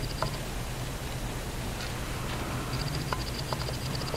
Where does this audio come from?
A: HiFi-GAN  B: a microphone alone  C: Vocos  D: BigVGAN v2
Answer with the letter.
B